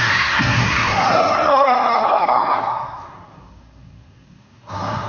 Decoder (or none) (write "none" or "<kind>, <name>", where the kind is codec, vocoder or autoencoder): codec, SNAC